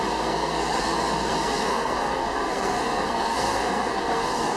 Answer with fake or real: fake